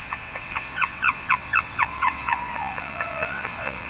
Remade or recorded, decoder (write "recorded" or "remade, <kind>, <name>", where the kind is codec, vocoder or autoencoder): remade, vocoder, WaveNeXt